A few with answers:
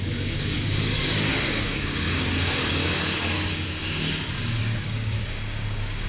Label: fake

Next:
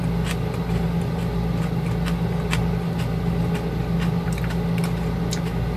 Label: real